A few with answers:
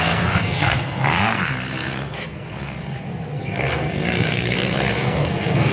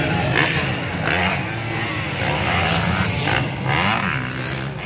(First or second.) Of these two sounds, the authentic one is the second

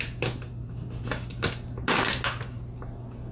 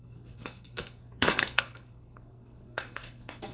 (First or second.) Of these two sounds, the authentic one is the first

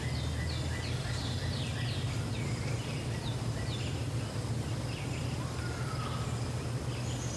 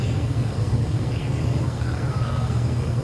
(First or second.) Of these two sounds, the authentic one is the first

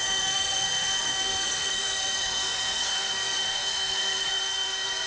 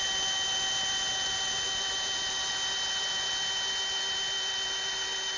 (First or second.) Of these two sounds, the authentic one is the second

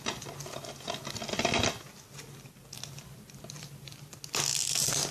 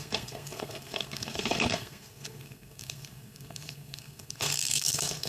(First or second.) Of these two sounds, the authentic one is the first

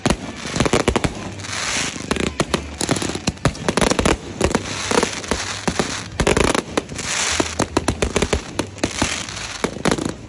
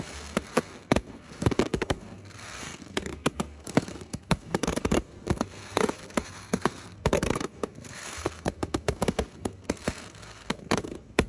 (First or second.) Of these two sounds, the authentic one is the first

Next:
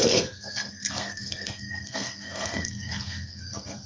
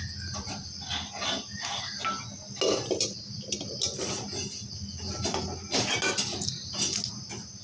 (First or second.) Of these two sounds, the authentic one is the second